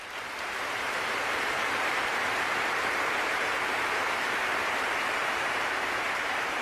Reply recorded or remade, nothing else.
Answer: remade